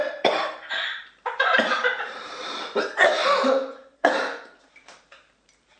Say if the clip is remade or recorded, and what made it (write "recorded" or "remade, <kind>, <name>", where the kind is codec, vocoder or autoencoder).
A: remade, vocoder, BigVGAN v2